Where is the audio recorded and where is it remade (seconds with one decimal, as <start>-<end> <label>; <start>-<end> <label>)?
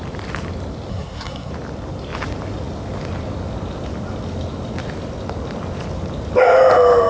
0.0-0.9 recorded; 0.9-1.5 remade; 1.5-7.1 recorded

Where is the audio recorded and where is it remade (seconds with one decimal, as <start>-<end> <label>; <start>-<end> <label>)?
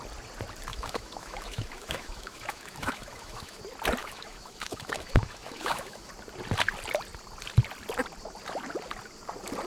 0.0-0.7 recorded; 0.7-3.6 remade; 3.6-4.0 recorded; 4.0-6.1 remade; 6.1-9.7 recorded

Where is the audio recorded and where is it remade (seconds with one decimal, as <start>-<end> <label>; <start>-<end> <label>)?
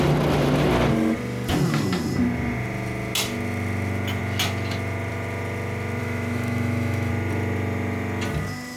0.0-6.0 recorded; 6.0-7.1 remade; 7.1-8.8 recorded